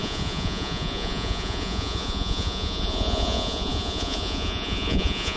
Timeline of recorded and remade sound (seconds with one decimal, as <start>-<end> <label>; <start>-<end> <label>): 0.0-5.4 remade

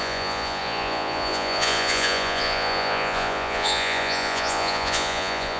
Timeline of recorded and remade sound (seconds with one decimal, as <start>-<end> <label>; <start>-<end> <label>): 0.0-5.6 remade

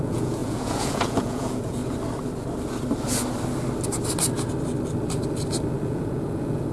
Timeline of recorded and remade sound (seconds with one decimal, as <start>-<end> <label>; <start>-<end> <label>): 0.0-1.8 remade; 1.8-5.8 recorded; 5.8-6.7 remade

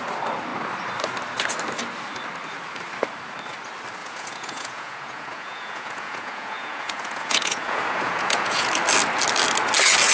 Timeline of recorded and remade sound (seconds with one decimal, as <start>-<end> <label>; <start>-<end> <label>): 0.0-4.0 recorded; 4.0-8.7 remade; 8.7-10.1 recorded

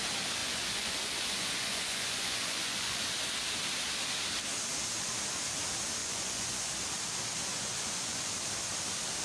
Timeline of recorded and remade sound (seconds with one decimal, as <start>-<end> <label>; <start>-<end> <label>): 0.0-0.4 recorded; 0.4-3.0 remade; 3.0-6.0 recorded; 6.0-6.7 remade; 6.7-7.5 recorded; 7.5-8.3 remade; 8.3-9.2 recorded

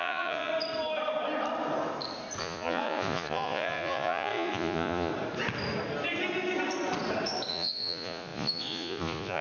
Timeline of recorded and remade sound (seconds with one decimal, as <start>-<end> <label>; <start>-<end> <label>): 0.0-0.5 remade; 0.5-2.4 recorded; 2.4-5.1 remade; 5.1-7.5 recorded; 7.5-9.4 remade